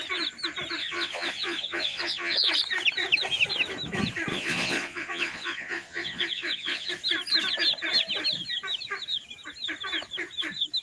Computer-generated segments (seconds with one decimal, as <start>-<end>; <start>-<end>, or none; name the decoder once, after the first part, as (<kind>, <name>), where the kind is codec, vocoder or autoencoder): 0.8-2.5 (vocoder, Vocos); 4.3-6.9